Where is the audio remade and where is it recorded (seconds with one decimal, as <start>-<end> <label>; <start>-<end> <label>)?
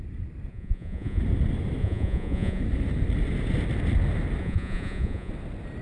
0.0-0.5 recorded; 0.5-1.2 remade; 1.2-1.8 recorded; 1.8-2.6 remade; 2.6-4.4 recorded; 4.4-5.3 remade; 5.3-5.8 recorded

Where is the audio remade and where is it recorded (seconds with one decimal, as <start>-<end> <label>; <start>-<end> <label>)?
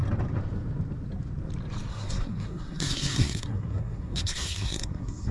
0.0-1.9 recorded; 1.9-5.3 remade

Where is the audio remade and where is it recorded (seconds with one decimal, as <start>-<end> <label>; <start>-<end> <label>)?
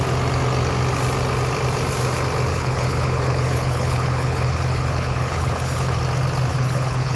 0.0-2.5 recorded; 2.5-6.0 remade; 6.0-6.5 recorded; 6.5-7.2 remade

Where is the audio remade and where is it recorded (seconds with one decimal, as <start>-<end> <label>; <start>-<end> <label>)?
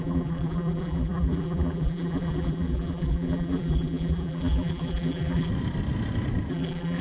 0.0-5.5 remade; 5.5-6.5 recorded; 6.5-7.0 remade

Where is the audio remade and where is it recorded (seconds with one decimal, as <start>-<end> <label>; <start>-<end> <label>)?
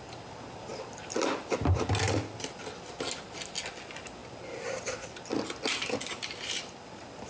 0.0-0.7 recorded; 0.7-1.8 remade; 1.8-7.3 recorded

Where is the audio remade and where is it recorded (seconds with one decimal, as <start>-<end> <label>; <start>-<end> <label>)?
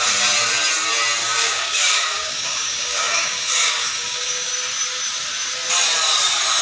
0.0-1.2 recorded; 1.2-4.5 remade; 4.5-6.6 recorded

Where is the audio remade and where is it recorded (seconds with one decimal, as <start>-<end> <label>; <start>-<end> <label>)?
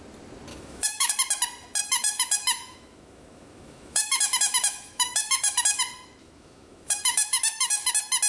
0.0-0.5 recorded; 0.5-1.1 remade; 1.1-1.8 recorded; 1.8-5.8 remade; 5.8-6.2 recorded; 6.2-7.9 remade; 7.9-8.3 recorded